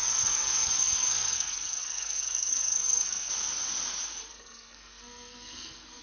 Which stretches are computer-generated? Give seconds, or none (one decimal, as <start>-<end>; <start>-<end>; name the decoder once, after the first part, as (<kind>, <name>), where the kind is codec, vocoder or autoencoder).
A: 0.0-3.3 (codec, SNAC); 4.3-6.0